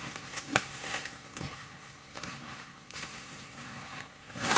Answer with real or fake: fake